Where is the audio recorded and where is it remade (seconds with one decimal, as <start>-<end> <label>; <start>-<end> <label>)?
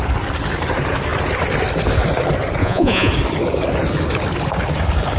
0.0-2.6 recorded; 2.6-3.1 remade; 3.1-5.2 recorded